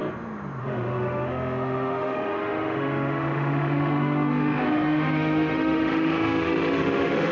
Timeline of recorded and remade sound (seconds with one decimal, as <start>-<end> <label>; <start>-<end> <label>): 0.0-0.6 recorded; 0.6-7.3 remade